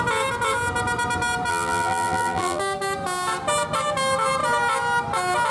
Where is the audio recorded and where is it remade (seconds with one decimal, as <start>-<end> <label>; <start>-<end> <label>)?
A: 0.0-1.5 recorded; 1.5-2.6 remade; 2.6-5.5 recorded